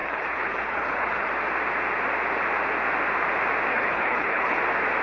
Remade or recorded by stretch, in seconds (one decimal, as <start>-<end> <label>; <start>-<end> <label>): 0.0-1.3 remade; 1.3-3.7 recorded; 3.7-4.6 remade; 4.6-5.0 recorded